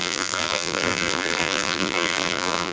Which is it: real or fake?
fake